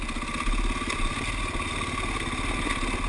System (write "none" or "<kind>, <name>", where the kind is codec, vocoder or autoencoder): none